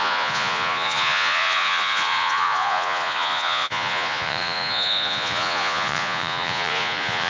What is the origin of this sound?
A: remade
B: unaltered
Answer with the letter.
A